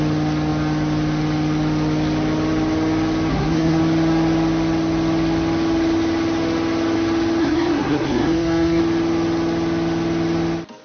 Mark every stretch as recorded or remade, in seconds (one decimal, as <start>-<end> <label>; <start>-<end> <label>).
0.0-3.3 recorded; 3.3-3.8 remade; 3.8-7.4 recorded; 7.4-8.8 remade; 8.8-10.8 recorded